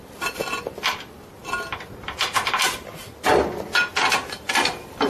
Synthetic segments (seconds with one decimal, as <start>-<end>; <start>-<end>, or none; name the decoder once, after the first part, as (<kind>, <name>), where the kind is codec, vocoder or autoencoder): none